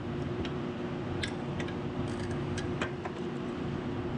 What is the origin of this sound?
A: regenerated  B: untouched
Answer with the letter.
B